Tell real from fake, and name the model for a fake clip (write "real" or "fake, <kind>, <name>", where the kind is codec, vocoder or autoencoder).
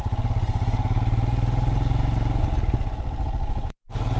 real